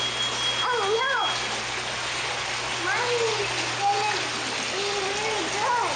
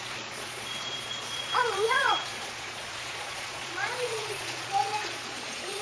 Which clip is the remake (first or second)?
second